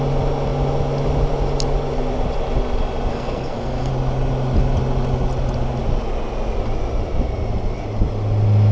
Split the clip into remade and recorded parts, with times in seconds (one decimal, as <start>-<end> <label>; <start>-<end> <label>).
0.0-3.1 recorded; 3.1-3.9 remade; 3.9-8.7 recorded